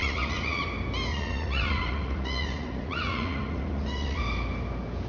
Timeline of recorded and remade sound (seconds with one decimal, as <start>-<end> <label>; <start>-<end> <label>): 0.0-0.6 remade; 0.6-1.1 recorded; 1.1-4.2 remade; 4.2-5.1 recorded